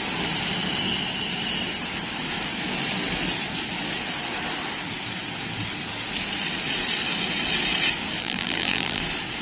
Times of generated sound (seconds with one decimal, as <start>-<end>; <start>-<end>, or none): 8.2-9.0